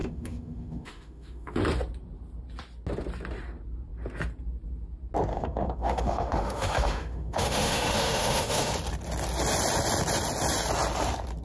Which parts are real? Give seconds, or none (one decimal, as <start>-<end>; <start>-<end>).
1.6-5.3; 8.7-11.4